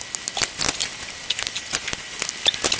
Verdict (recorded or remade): recorded